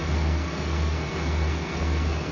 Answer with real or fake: fake